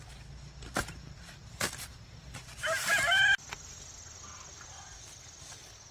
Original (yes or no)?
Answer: yes